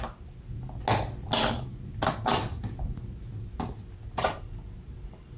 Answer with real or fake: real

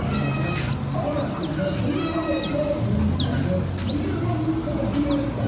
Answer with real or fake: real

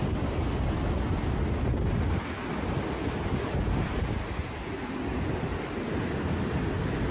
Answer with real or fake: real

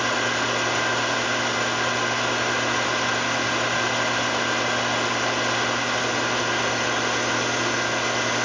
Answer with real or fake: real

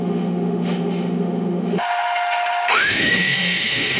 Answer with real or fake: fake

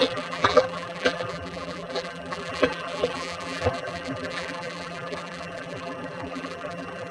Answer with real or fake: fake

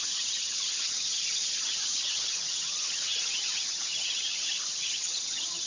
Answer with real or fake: fake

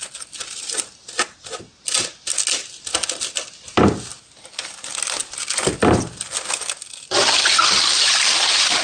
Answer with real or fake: real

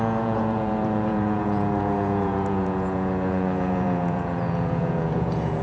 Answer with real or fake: fake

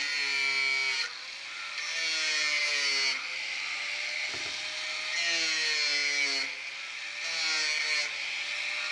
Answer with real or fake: real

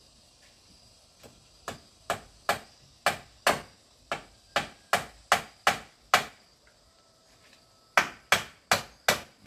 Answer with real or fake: real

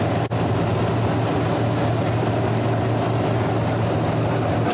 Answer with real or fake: real